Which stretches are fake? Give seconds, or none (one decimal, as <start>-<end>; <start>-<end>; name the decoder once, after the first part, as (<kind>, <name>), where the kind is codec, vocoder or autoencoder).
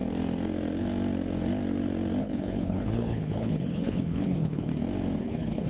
2.2-4.7 (codec, HILCodec); 5.2-5.7